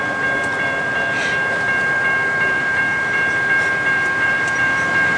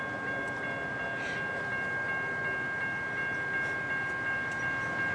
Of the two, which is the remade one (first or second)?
first